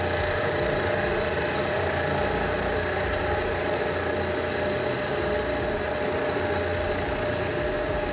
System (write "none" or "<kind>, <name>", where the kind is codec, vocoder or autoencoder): none